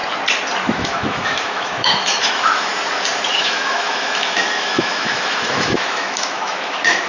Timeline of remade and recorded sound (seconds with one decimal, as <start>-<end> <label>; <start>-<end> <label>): 0.0-0.6 recorded; 0.6-2.7 remade; 2.7-3.4 recorded; 3.4-7.1 remade